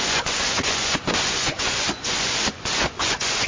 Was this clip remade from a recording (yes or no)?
yes